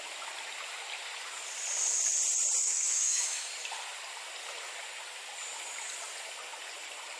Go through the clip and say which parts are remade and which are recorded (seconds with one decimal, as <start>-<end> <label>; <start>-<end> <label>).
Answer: 0.0-2.6 recorded; 2.6-3.5 remade; 3.5-7.2 recorded